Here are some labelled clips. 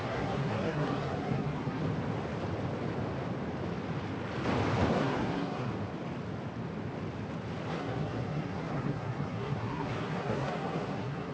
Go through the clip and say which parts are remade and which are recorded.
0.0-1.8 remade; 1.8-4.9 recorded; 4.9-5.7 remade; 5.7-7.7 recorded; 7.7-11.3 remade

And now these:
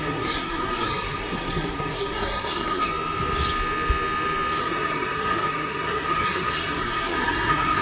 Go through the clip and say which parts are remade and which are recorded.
0.0-2.9 remade; 2.9-4.6 recorded; 4.6-7.8 remade